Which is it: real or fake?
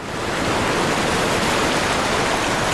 real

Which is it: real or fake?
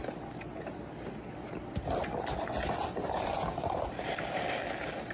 real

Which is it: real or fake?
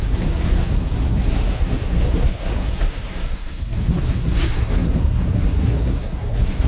fake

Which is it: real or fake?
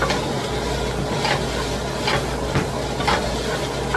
real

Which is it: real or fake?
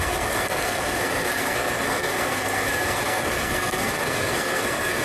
fake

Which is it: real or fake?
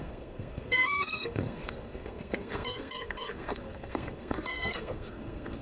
fake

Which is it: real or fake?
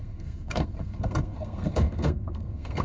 fake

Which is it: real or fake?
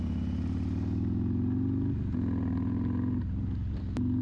real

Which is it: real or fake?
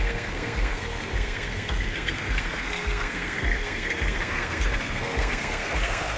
fake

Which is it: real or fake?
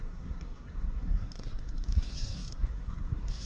fake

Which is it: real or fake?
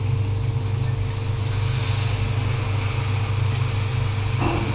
real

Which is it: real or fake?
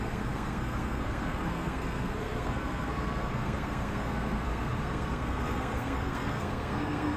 fake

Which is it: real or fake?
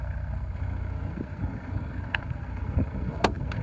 fake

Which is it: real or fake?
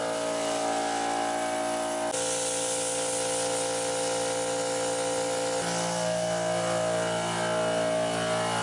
real